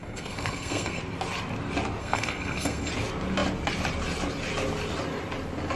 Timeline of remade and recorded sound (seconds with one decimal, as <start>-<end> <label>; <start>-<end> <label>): 0.0-1.0 remade; 1.0-2.0 recorded; 2.0-2.9 remade; 2.9-5.8 recorded